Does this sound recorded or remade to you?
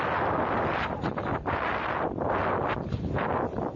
recorded